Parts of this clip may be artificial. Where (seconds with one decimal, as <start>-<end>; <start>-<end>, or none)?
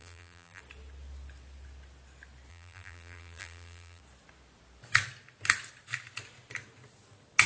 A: 0.0-0.6; 2.5-4.0